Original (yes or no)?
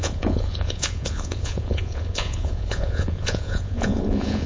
no